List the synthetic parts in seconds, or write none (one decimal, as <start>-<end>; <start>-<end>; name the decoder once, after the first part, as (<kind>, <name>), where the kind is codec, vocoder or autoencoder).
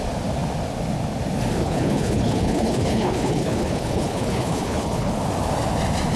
1.6-5.1 (codec, HILCodec)